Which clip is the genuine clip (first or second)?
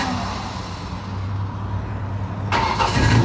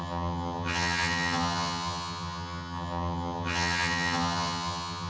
first